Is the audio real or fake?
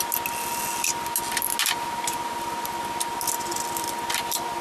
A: real